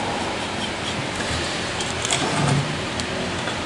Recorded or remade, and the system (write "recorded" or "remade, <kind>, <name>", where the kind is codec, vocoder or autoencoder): remade, vocoder, BigVGAN v2